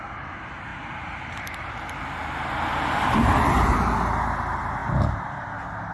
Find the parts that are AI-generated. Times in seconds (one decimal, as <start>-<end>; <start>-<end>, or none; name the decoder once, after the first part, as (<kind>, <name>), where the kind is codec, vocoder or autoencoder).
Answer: none